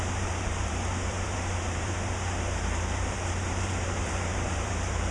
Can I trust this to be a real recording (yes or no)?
no